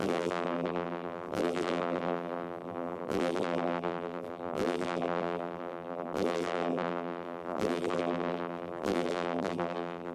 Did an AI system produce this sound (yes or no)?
yes